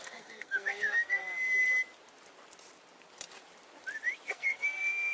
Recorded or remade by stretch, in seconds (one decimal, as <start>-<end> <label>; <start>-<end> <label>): 0.0-1.2 remade; 1.2-4.3 recorded; 4.3-5.1 remade